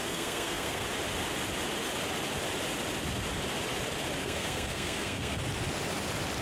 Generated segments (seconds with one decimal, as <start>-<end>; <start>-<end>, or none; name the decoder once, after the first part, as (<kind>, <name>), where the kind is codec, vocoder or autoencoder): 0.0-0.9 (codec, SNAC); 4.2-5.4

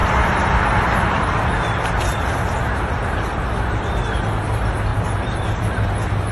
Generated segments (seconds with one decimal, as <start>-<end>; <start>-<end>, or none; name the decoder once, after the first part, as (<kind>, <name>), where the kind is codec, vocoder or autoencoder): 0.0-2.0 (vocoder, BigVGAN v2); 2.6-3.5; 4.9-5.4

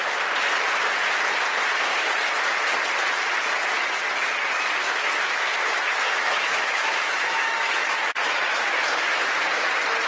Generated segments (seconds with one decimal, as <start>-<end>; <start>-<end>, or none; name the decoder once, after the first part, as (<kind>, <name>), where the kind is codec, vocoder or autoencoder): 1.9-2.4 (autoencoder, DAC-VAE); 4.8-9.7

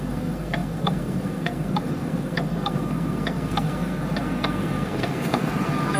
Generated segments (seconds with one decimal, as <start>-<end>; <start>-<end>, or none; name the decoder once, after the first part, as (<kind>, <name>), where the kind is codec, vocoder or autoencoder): 0.0-6.0 (codec, SNAC)

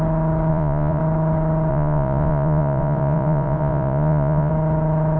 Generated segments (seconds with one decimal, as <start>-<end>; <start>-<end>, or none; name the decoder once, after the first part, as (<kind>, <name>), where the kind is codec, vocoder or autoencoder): 0.5-1.0 (vocoder, Vocos); 1.7-4.5

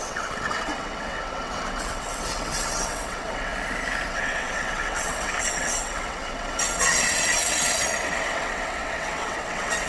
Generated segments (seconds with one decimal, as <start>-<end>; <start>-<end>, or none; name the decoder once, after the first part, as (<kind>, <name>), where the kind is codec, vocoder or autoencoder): 0.0-3.5 (vocoder, WaveNeXt); 4.1-9.9

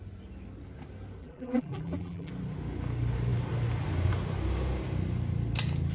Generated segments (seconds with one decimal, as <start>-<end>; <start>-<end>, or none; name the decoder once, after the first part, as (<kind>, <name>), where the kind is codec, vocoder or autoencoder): 1.2-2.3 (vocoder, BigVGAN v2)